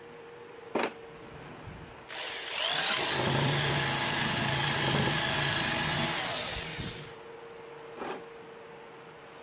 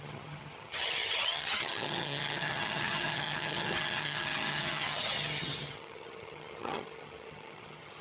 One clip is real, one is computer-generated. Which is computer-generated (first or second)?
second